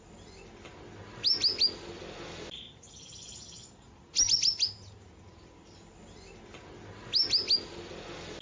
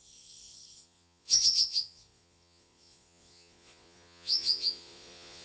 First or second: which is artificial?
second